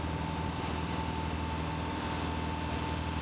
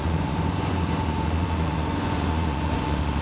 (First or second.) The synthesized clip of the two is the second